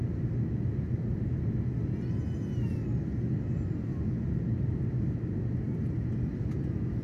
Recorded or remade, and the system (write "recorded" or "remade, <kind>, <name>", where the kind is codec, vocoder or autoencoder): recorded